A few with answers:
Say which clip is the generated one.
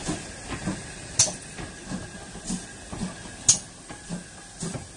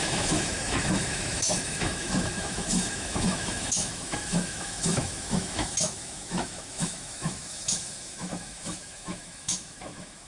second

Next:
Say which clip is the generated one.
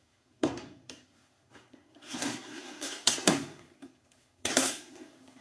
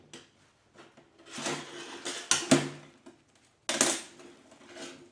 first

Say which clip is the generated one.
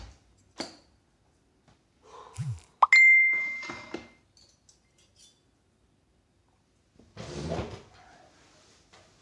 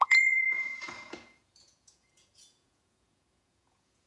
second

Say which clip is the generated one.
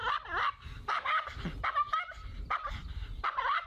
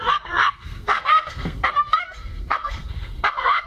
second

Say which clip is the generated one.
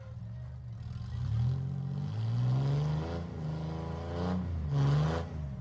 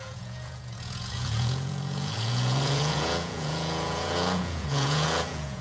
second